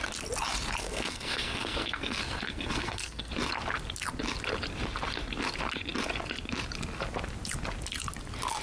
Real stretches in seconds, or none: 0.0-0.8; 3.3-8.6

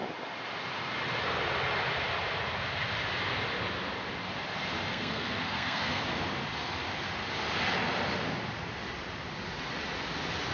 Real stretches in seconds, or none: 0.0-4.9; 6.0-10.5

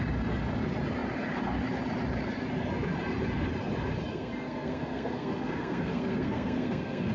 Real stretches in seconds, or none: 0.0-4.1